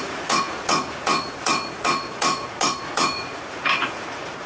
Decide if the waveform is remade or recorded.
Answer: remade